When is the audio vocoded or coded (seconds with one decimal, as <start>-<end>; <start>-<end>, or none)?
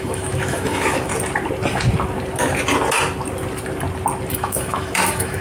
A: 0.0-1.1; 4.3-5.4